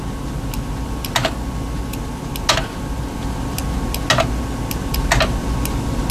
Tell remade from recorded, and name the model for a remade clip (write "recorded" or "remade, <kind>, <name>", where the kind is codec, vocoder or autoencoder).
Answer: recorded